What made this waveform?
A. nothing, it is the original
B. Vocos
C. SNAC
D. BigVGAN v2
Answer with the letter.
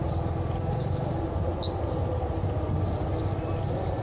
A